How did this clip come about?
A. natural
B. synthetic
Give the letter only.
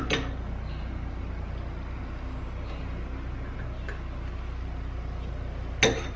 A